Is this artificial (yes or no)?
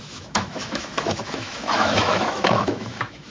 yes